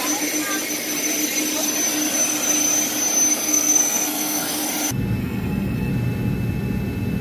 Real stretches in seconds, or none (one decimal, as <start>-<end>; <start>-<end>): 0.0-3.3; 4.6-5.2; 5.9-7.2